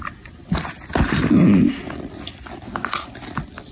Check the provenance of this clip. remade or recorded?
remade